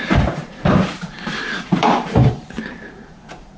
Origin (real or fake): fake